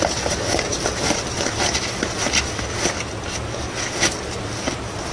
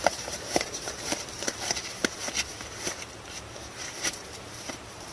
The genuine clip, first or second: first